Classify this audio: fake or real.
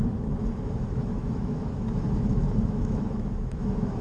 fake